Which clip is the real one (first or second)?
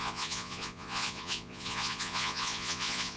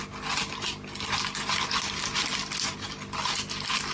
second